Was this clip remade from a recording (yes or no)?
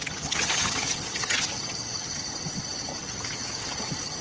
yes